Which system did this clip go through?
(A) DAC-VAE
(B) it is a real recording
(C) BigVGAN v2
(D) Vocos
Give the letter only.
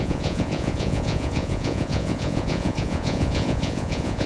D